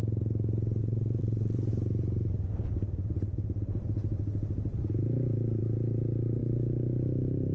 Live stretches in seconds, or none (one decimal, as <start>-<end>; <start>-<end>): 0.0-0.8; 1.7-7.5